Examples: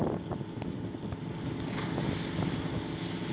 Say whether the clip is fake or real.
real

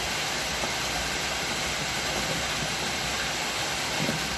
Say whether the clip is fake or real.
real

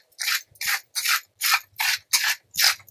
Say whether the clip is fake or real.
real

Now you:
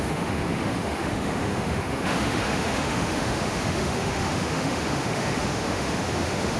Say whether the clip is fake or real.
fake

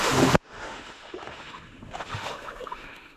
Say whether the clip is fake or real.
fake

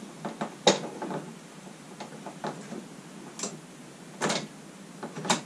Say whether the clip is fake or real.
real